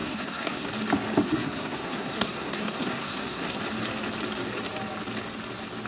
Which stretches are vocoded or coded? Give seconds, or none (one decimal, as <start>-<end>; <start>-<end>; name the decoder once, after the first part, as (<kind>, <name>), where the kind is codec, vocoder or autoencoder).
0.0-0.7 (codec, SNAC); 1.2-3.6